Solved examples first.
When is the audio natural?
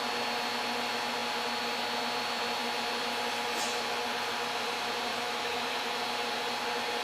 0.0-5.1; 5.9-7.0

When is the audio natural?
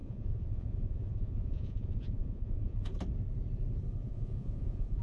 2.9-4.0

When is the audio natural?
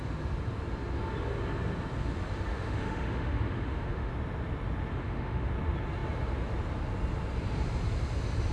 0.0-2.5; 4.1-4.9; 5.5-8.5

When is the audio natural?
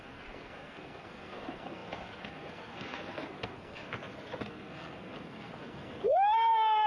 none